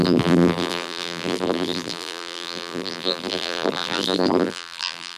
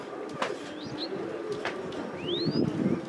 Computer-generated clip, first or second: first